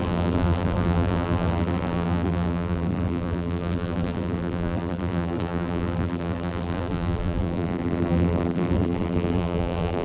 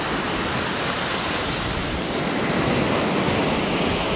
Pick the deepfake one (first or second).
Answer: first